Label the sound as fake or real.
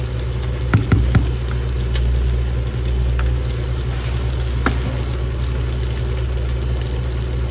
real